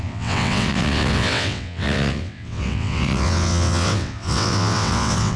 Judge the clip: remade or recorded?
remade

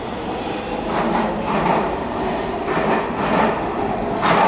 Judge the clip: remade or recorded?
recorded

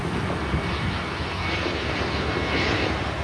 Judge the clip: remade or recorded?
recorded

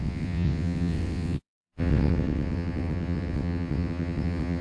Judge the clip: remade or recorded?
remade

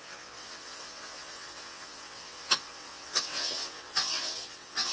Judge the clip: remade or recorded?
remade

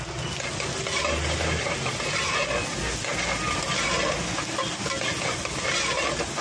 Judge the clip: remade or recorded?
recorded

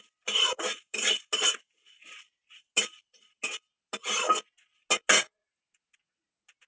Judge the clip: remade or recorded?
recorded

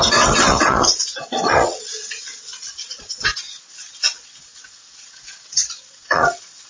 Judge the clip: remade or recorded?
remade